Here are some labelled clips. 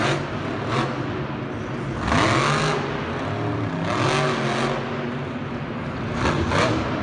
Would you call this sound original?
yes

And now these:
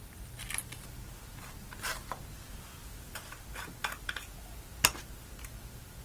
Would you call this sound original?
yes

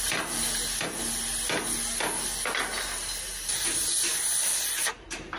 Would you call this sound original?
yes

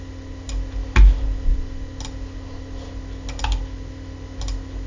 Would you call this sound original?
yes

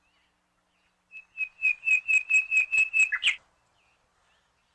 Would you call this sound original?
yes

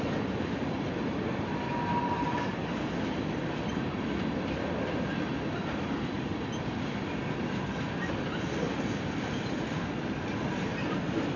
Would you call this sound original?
yes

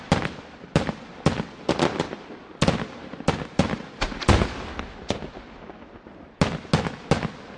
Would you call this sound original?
yes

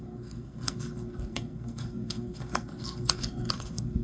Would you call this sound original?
no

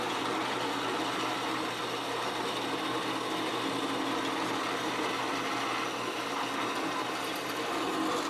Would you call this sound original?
yes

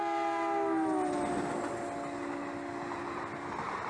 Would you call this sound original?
yes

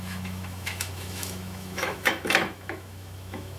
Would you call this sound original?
no